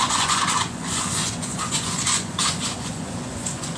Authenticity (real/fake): fake